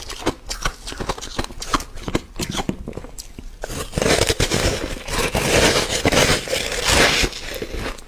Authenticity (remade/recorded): recorded